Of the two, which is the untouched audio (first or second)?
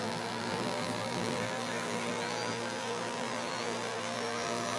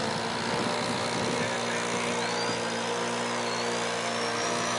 second